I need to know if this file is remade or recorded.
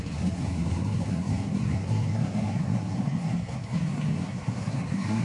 remade